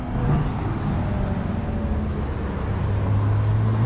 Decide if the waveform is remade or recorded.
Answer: recorded